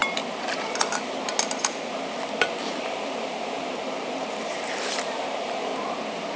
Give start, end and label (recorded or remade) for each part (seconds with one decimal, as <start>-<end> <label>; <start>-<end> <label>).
0.0-2.6 recorded; 2.6-5.7 remade; 5.7-6.4 recorded